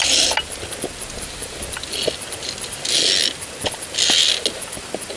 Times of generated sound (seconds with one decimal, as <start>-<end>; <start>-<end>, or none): none